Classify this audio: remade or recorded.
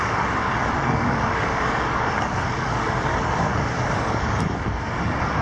remade